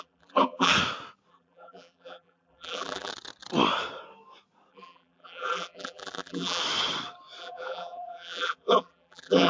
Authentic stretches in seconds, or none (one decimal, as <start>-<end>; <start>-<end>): 0.7-1.3; 3.1-4.7; 6.6-7.4